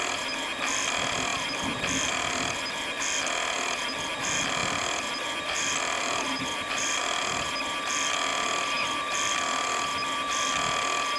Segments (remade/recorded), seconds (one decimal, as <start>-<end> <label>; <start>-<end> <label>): 0.0-1.3 recorded; 1.3-2.1 remade; 2.1-4.6 recorded; 4.6-7.8 remade; 7.8-8.3 recorded; 8.3-10.3 remade; 10.3-11.2 recorded